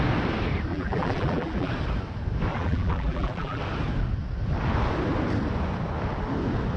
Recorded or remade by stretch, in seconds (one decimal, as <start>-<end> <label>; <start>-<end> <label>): 0.0-0.7 recorded; 0.7-1.7 remade; 1.7-2.5 recorded; 2.5-3.6 remade; 3.6-6.8 recorded